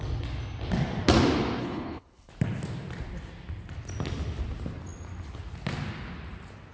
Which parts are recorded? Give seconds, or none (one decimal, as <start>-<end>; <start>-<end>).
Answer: 0.0-1.6; 2.3-6.7